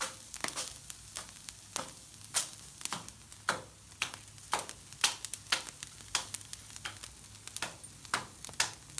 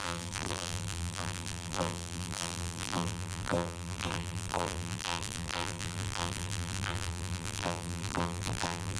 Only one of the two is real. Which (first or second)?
first